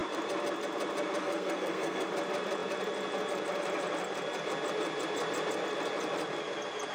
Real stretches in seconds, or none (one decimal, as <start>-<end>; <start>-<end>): 0.0-1.2; 2.1-6.9